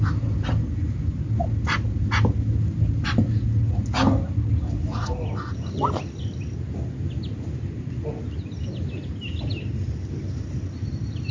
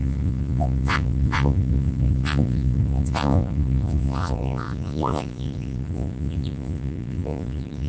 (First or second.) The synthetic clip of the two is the second